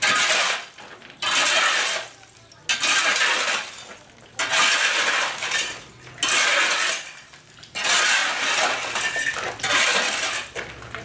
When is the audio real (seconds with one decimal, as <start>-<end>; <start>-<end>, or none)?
0.0-11.0